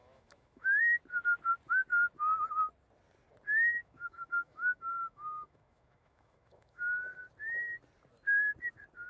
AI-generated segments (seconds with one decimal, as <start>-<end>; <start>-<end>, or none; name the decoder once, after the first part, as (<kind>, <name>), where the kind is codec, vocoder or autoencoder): 0.0-0.8 (autoencoder, DAC-VAE); 3.8-6.8